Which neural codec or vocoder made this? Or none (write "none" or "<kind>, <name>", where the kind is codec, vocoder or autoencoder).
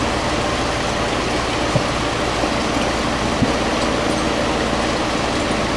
none